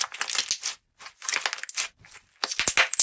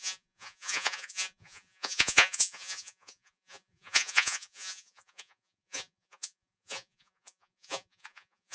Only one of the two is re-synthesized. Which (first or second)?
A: second